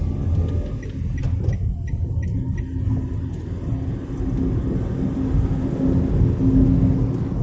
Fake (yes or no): no